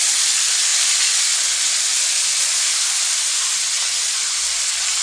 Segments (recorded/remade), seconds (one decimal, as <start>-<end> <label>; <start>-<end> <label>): 0.0-5.0 recorded